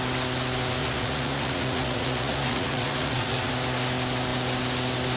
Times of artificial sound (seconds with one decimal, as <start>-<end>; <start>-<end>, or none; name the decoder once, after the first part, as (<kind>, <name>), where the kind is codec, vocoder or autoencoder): 0.8-3.5 (vocoder, Vocos)